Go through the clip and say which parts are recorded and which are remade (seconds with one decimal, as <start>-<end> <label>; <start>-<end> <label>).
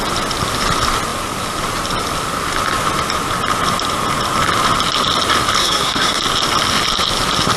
0.0-5.6 recorded; 5.6-6.2 remade; 6.2-7.6 recorded